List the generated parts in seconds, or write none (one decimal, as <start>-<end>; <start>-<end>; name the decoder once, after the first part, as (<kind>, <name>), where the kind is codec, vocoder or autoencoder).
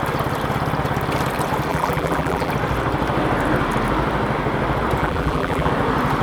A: 1.7-2.5 (vocoder, BigVGAN v2); 5.0-5.7